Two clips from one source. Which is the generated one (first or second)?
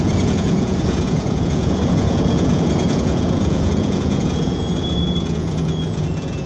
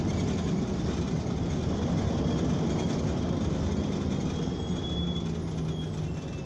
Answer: first